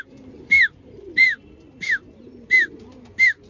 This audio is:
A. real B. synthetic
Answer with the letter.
B